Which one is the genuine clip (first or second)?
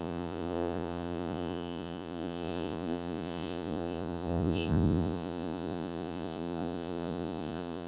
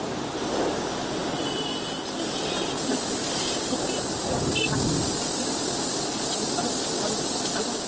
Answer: second